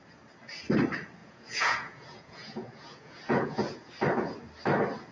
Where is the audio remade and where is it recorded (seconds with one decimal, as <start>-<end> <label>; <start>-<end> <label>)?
0.0-1.2 recorded; 1.2-3.9 remade; 3.9-5.1 recorded